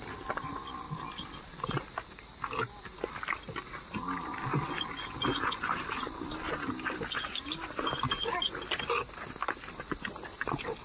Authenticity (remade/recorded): recorded